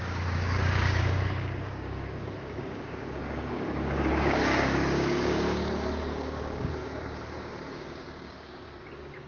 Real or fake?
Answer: fake